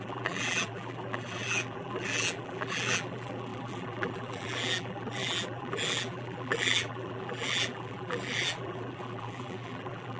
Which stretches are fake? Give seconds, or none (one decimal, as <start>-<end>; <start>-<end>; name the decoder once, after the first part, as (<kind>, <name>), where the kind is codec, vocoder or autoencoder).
0.0-10.2 (vocoder, BigVGAN v2)